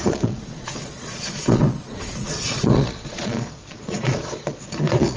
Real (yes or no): no